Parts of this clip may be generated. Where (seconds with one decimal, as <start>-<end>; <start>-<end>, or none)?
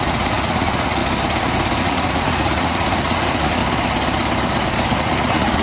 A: 0.0-1.0; 1.8-3.6; 5.0-5.6